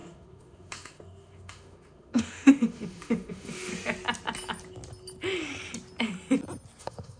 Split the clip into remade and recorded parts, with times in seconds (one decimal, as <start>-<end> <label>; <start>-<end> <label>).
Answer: 0.0-3.7 remade; 3.7-6.8 recorded; 6.8-7.2 remade